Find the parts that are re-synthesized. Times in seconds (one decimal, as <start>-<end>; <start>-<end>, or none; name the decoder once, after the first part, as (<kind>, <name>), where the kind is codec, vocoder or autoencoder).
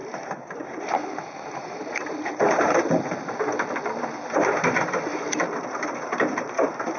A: 0.0-3.3 (vocoder, BigVGAN v2); 5.1-7.0